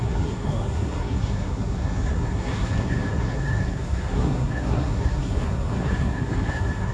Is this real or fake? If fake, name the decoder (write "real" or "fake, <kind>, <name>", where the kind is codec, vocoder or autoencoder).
fake, codec, SNAC